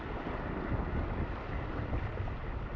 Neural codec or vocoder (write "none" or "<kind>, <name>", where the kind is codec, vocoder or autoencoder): none